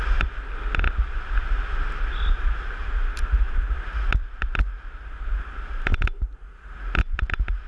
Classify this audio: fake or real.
real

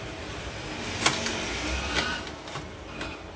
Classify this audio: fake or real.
real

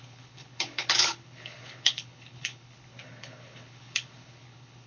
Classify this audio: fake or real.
fake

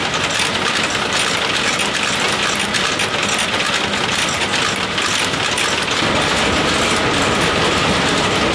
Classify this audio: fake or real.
real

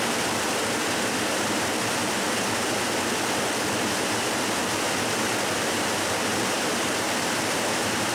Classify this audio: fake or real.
real